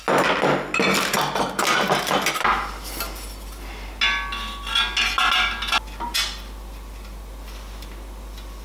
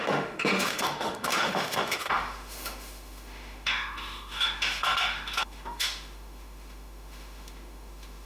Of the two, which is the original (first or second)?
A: first